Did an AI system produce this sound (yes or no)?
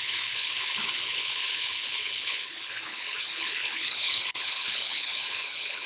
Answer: yes